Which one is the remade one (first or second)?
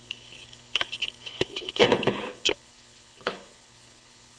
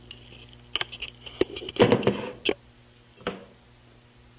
first